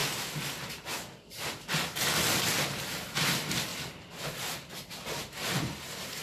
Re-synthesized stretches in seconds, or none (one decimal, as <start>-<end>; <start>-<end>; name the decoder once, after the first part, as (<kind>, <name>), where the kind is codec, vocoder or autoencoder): none